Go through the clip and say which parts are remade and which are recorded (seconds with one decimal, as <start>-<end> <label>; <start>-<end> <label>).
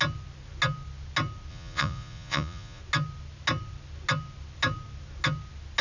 0.0-1.5 recorded; 1.5-2.8 remade; 2.8-5.8 recorded